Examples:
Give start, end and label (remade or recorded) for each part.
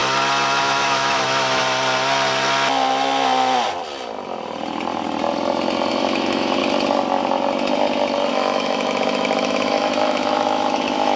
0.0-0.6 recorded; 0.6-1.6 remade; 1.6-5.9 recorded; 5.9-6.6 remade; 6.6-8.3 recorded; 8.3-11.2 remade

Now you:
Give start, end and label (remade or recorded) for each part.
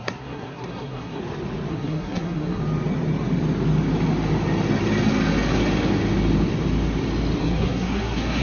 0.0-1.2 remade; 1.2-1.7 recorded; 1.7-2.6 remade; 2.6-7.4 recorded; 7.4-8.4 remade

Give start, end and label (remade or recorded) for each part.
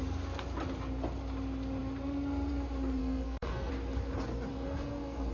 0.0-3.0 recorded; 3.0-3.7 remade; 3.7-4.5 recorded; 4.5-5.3 remade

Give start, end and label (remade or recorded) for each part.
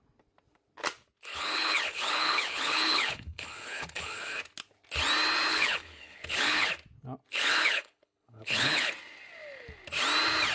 0.0-1.3 recorded; 1.3-4.4 remade; 4.4-5.5 recorded; 5.5-6.7 remade; 6.7-7.3 recorded; 7.3-8.9 remade; 8.9-10.5 recorded